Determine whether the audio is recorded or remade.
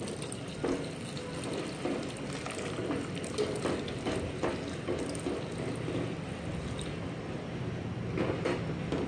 recorded